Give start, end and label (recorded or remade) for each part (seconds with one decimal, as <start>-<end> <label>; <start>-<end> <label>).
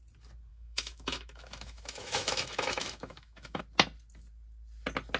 0.0-0.5 recorded; 0.5-3.6 remade; 3.6-5.2 recorded